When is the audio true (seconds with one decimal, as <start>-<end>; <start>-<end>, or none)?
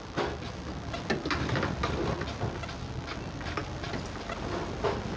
0.0-5.2